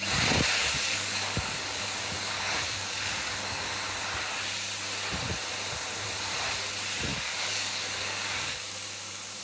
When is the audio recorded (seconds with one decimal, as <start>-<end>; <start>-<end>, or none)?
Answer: 0.0-0.7; 3.7-7.1